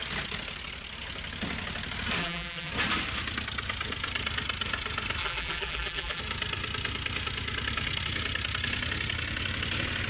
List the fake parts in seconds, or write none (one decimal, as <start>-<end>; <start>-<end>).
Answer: 2.2-2.7; 5.2-6.2